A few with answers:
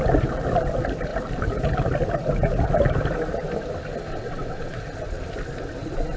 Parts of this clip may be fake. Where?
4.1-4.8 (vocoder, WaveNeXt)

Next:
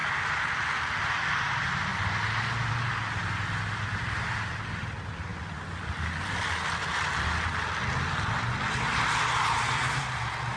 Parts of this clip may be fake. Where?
none

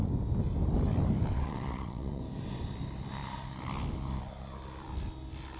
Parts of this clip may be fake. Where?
1.3-2.2 (vocoder, WaveNeXt)